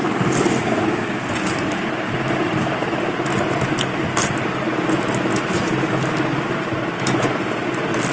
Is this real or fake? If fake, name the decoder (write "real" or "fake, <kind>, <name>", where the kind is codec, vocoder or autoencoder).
real